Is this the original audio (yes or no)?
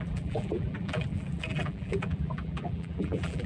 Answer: no